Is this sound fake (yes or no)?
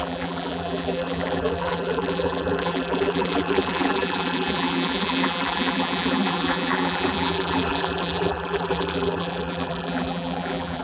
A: yes